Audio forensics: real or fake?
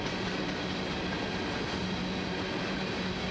real